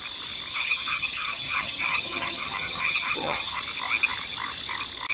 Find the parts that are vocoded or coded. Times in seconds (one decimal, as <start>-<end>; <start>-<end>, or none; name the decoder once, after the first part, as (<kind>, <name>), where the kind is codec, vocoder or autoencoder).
0.5-3.6 (vocoder, HiFi-GAN)